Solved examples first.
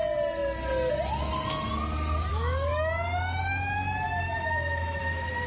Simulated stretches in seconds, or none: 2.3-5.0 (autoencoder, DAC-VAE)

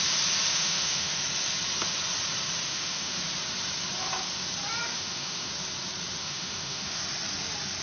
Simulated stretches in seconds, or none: 0.5-1.2 (autoencoder, DAC-VAE); 2.7-3.2; 4.9-5.5; 6.2-7.0

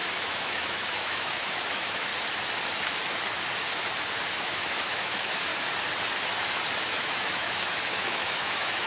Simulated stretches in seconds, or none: 0.0-2.1 (autoencoder, DAC-VAE); 4.4-5.5; 6.8-8.9